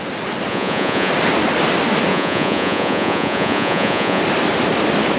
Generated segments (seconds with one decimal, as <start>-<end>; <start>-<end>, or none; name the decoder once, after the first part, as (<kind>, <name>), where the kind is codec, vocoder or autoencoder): 0.5-1.1 (vocoder, Vocos); 2.1-4.2